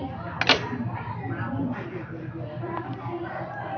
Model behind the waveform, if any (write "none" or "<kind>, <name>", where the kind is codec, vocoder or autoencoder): none